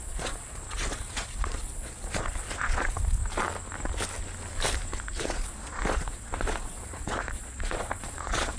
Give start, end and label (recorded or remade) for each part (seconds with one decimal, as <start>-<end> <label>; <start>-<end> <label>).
0.0-3.2 remade; 3.2-5.2 recorded; 5.2-8.6 remade